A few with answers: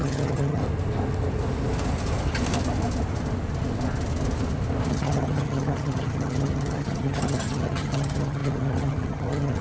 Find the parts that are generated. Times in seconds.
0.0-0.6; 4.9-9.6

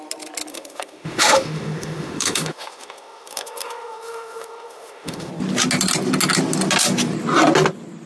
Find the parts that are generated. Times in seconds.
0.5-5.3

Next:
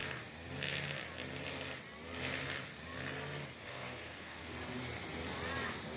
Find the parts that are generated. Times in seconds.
3.6-4.4